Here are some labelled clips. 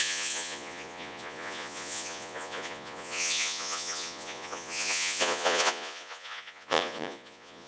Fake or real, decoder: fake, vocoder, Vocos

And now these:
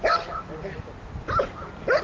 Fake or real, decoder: real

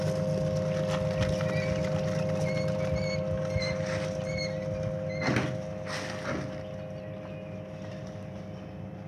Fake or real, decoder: real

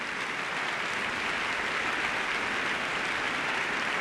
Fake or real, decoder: real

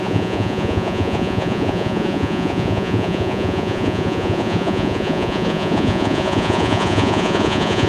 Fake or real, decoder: fake, vocoder, Vocos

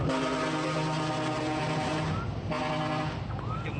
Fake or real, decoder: real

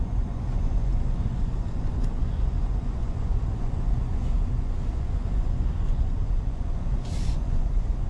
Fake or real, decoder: fake, vocoder, Vocos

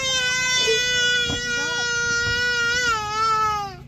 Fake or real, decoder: real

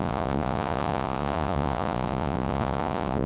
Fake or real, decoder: fake, vocoder, Vocos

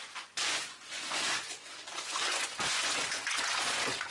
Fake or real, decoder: fake, vocoder, Vocos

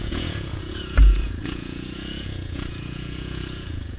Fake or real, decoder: fake, vocoder, Vocos